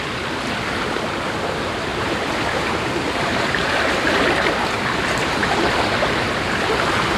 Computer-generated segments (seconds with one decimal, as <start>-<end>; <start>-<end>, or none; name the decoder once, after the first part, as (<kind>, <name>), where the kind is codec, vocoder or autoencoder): 1.9-3.7 (vocoder, BigVGAN v2)